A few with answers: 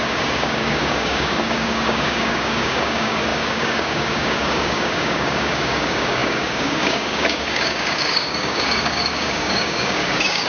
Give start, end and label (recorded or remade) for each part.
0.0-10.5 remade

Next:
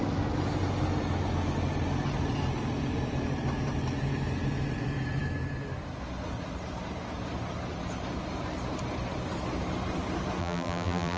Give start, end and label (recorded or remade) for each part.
0.0-10.4 recorded; 10.4-11.2 remade

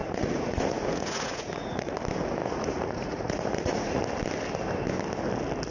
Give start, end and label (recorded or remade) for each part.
0.0-2.0 remade; 2.0-2.4 recorded; 2.4-4.0 remade; 4.0-5.7 recorded

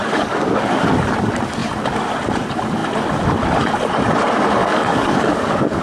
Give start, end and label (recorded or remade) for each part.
0.0-0.8 remade; 0.8-4.6 recorded; 4.6-5.8 remade

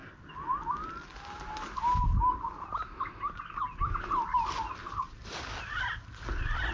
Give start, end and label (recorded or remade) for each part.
0.0-6.7 recorded

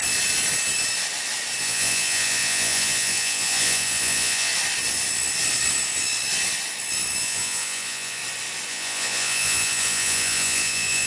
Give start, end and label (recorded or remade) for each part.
0.0-1.6 recorded; 1.6-4.5 remade; 4.5-7.2 recorded; 7.2-8.2 remade; 8.2-8.7 recorded; 8.7-11.1 remade